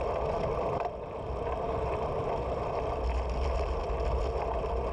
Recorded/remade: recorded